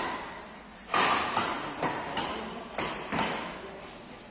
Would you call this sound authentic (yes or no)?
yes